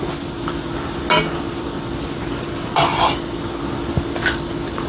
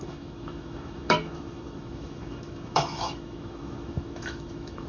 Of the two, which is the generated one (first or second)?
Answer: second